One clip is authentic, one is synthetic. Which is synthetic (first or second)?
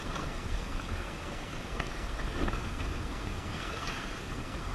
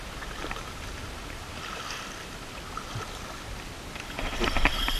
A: first